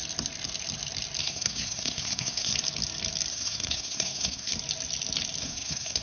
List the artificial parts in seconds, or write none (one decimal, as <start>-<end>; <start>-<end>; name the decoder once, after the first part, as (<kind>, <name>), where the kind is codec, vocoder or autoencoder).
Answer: 1.2-2.5 (codec, SNAC); 3.3-4.5; 5.4-6.0